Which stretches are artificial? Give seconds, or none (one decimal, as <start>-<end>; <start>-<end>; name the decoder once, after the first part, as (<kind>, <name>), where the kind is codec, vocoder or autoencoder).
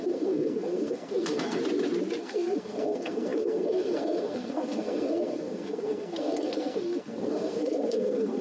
0.0-1.6 (codec, SNAC); 2.2-8.4